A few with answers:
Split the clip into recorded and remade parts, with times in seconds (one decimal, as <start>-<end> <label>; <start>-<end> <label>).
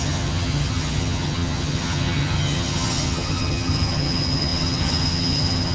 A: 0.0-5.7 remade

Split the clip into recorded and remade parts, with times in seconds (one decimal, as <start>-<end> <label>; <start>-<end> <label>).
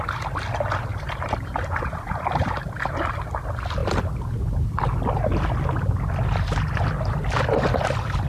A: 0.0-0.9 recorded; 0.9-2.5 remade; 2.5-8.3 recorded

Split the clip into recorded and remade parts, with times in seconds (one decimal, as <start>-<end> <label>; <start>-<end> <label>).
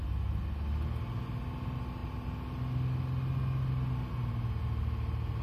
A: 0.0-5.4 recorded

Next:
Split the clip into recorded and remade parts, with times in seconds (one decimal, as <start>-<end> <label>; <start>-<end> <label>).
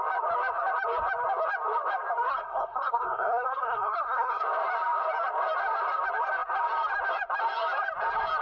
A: 0.0-2.3 recorded; 2.3-4.4 remade; 4.4-8.4 recorded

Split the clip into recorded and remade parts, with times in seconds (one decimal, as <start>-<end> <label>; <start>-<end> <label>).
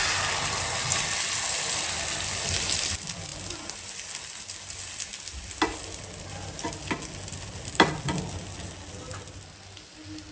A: 0.0-10.3 recorded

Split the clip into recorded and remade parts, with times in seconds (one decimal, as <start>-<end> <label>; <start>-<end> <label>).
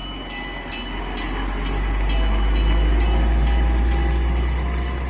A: 0.0-5.1 recorded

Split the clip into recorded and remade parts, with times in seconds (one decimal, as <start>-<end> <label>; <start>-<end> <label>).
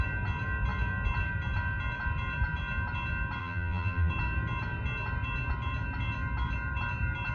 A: 0.0-3.4 recorded; 3.4-4.1 remade; 4.1-7.3 recorded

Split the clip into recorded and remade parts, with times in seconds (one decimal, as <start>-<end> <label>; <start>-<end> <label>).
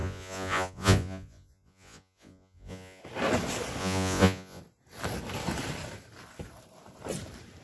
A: 0.0-3.0 remade; 3.0-3.8 recorded; 3.8-4.6 remade; 4.6-7.6 recorded